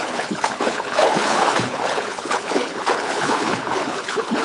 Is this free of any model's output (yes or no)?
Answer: no